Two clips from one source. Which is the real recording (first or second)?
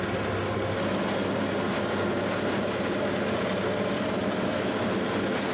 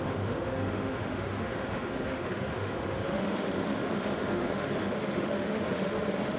first